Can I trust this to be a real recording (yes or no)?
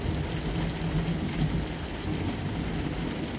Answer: yes